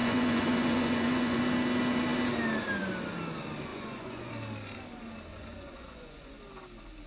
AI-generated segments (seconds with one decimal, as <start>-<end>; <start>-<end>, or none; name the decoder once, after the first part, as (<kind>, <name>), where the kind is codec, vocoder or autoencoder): 0.0-1.4 (vocoder, Vocos); 3.7-4.3; 5.3-6.4